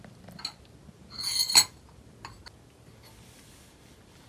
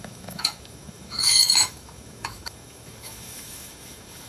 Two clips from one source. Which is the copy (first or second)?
second